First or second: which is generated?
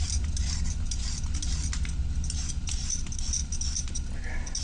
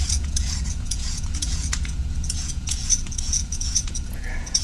second